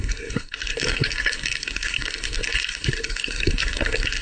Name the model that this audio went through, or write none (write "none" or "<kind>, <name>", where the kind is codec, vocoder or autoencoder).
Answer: codec, SNAC